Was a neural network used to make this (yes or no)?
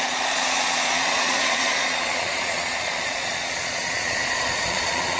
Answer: yes